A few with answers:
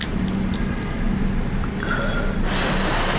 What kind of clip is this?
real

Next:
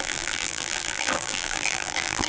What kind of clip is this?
fake